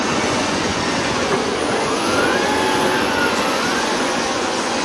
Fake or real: fake